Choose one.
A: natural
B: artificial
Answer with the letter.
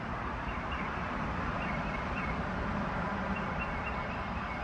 B